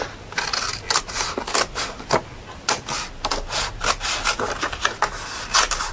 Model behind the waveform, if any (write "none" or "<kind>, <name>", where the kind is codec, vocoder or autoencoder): none